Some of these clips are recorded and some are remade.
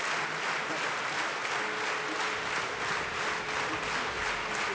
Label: recorded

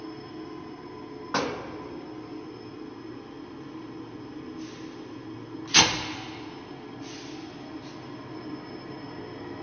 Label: recorded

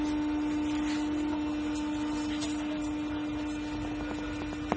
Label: recorded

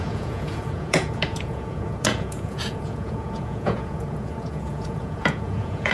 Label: remade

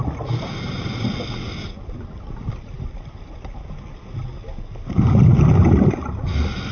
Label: recorded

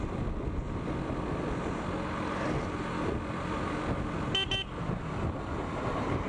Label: recorded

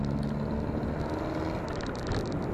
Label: recorded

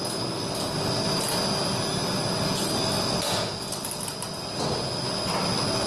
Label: recorded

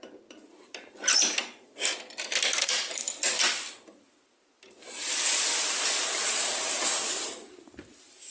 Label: recorded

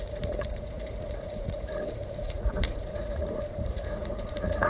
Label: remade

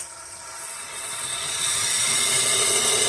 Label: remade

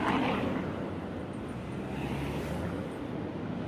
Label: recorded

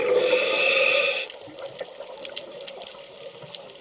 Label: recorded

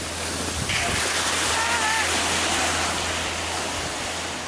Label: recorded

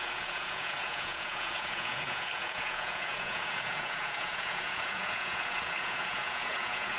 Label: remade